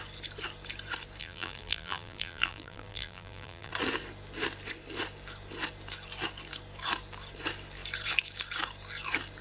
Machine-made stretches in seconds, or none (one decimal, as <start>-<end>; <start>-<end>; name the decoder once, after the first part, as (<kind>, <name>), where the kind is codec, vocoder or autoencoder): 1.2-3.7 (vocoder, BigVGAN v2)